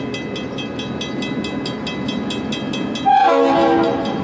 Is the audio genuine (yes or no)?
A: yes